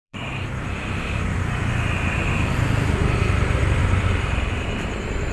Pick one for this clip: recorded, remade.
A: remade